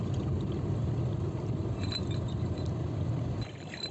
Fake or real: fake